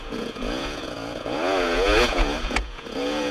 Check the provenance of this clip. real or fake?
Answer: fake